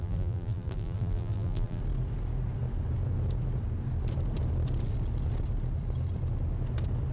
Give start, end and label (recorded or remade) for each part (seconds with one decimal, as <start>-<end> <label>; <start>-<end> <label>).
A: 0.0-1.8 remade; 1.8-7.1 recorded